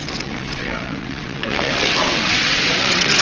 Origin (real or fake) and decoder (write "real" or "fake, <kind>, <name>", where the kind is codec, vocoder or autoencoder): fake, vocoder, WaveNeXt